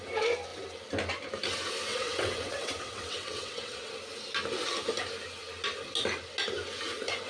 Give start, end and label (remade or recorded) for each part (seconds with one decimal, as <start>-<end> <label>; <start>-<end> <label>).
0.0-1.9 recorded; 1.9-3.9 remade; 3.9-7.3 recorded